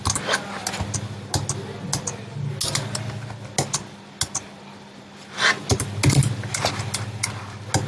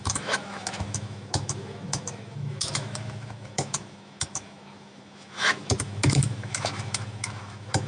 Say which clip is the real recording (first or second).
first